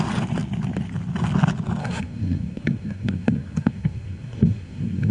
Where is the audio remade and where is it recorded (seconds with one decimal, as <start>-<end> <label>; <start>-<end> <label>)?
0.0-1.8 recorded; 1.8-5.1 remade